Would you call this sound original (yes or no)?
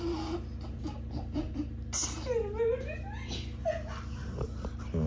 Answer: yes